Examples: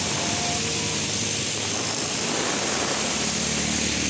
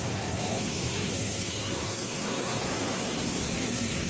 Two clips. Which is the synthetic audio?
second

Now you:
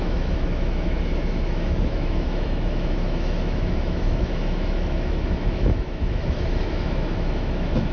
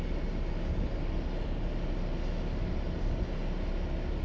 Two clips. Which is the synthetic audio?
first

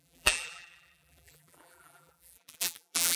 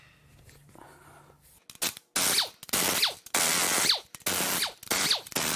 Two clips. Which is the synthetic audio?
first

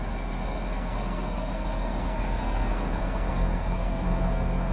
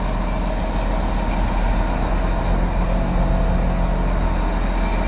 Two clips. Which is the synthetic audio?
first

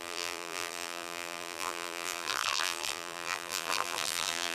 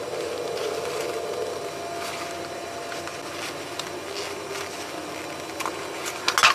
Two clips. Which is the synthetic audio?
first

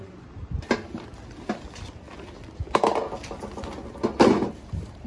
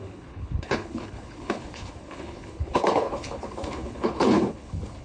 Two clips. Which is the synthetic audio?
second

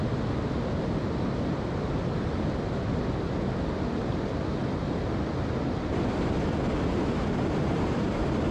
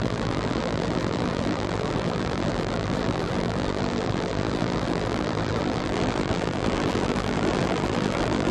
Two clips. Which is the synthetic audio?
second